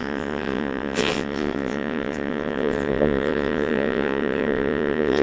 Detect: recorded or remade remade